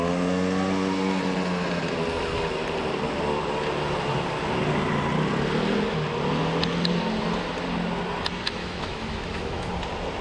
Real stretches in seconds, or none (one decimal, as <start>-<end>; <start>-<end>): 0.0-8.6; 9.7-10.2